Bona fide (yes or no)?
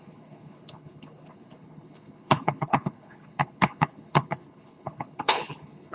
no